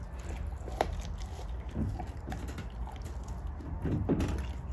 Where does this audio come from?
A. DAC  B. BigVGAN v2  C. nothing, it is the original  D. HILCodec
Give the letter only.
C